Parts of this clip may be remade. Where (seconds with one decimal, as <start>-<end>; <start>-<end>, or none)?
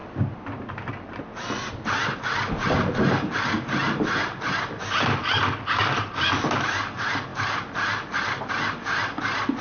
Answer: none